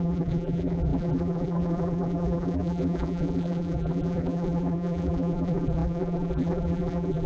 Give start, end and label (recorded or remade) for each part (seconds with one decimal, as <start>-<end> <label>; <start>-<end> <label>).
0.0-7.3 remade